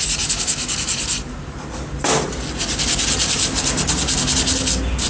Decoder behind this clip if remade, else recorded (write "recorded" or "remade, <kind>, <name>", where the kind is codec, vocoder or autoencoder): recorded